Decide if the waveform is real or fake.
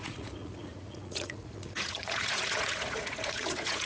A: fake